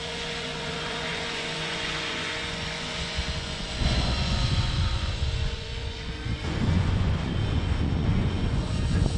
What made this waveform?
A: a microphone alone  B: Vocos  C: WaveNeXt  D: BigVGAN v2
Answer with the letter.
B